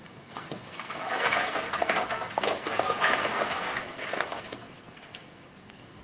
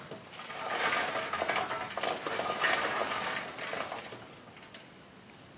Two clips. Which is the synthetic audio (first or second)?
first